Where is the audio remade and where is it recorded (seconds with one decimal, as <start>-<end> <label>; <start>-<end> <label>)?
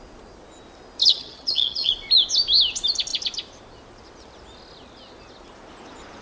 0.0-1.0 recorded; 1.0-1.9 remade; 1.9-6.2 recorded